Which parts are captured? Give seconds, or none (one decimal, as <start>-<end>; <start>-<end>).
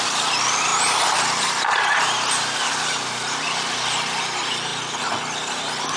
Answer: 0.0-6.0